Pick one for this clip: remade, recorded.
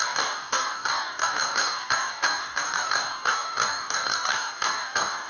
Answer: remade